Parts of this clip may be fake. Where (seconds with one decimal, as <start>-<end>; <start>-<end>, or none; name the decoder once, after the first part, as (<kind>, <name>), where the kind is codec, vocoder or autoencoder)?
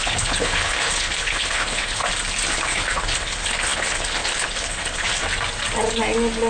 0.0-2.0 (codec, HILCodec); 2.5-5.2